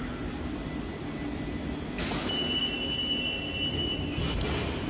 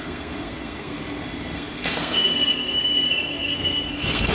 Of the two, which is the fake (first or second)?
second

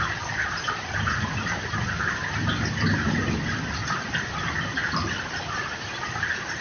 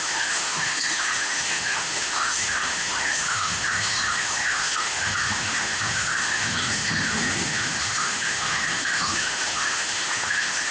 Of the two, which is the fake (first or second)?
second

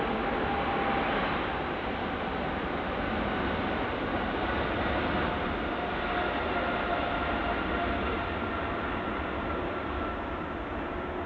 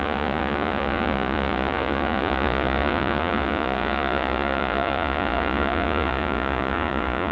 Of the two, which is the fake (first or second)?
second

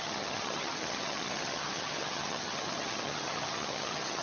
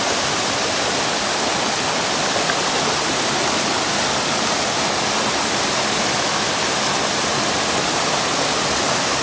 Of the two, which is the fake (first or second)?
first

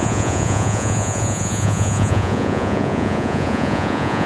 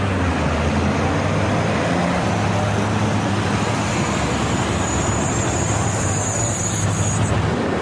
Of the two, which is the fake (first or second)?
first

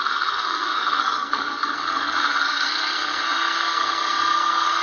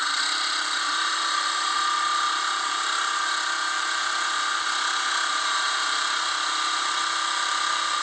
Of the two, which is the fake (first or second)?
first